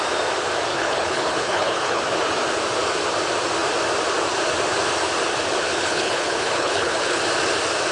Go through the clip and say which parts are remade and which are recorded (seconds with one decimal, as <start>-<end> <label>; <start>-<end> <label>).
0.0-0.7 recorded; 0.7-2.0 remade; 2.0-5.7 recorded; 5.7-7.2 remade; 7.2-7.9 recorded